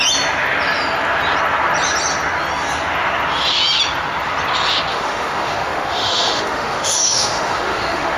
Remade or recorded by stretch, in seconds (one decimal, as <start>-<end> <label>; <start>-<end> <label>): 0.0-4.9 recorded; 4.9-8.2 remade